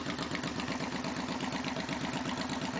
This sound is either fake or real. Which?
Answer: real